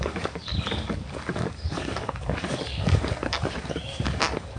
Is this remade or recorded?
remade